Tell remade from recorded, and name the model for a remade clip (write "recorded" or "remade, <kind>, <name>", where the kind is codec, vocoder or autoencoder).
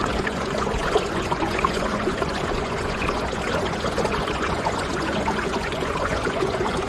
remade, vocoder, Vocos